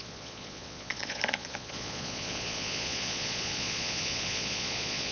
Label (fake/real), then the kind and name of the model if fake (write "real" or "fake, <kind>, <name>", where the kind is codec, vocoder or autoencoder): fake, vocoder, Vocos